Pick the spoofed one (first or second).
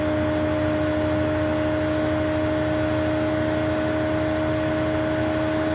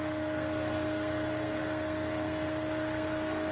second